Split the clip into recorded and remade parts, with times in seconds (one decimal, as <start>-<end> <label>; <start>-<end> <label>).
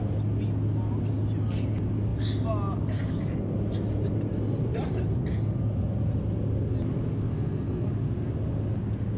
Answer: 0.0-7.3 recorded; 7.3-7.9 remade; 7.9-9.2 recorded